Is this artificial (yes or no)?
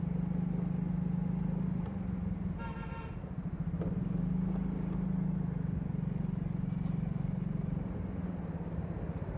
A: no